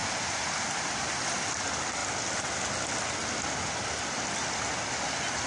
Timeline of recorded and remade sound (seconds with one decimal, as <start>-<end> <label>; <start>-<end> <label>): 0.0-5.5 recorded